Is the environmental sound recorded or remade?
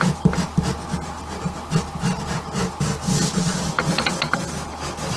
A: recorded